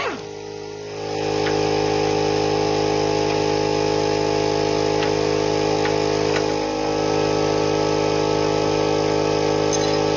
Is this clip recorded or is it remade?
recorded